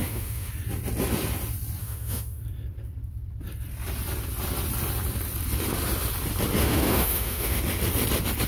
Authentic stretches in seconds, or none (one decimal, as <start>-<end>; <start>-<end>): 0.5-1.8; 2.4-6.6; 7.6-8.5